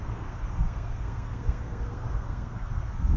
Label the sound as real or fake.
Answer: fake